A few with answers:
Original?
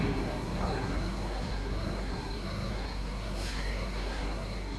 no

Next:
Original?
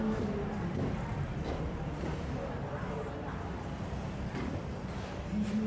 yes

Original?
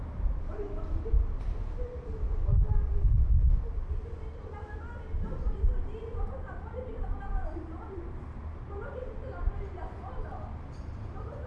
yes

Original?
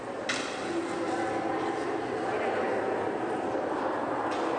yes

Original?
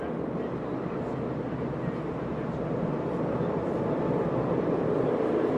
yes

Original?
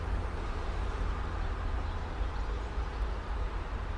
yes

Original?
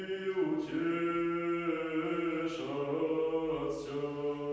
yes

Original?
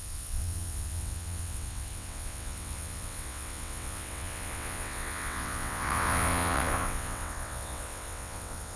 no